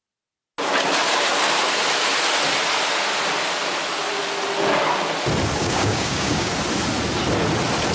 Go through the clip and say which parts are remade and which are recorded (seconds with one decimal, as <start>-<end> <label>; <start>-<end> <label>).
0.0-5.6 recorded; 5.6-6.5 remade; 6.5-7.9 recorded